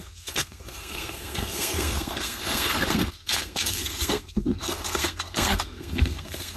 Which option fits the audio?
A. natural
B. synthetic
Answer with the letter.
B